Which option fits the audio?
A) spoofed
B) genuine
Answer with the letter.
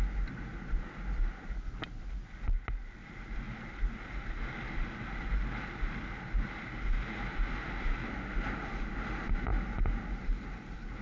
B